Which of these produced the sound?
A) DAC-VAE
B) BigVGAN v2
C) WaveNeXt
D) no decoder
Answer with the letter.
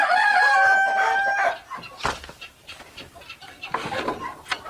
B